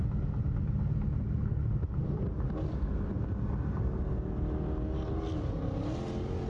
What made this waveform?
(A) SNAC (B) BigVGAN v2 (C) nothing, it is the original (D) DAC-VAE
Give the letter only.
C